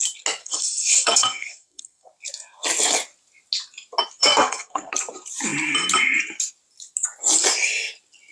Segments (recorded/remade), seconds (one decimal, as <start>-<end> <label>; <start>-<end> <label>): 0.0-0.4 recorded; 0.4-2.1 remade; 2.1-4.2 recorded; 4.2-4.9 remade; 4.9-8.3 recorded